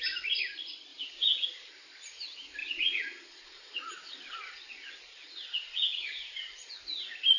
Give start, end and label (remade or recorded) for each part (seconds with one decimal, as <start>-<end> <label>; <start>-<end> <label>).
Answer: 0.0-0.9 recorded; 0.9-1.7 remade; 1.7-2.6 recorded; 2.6-6.7 remade; 6.7-7.4 recorded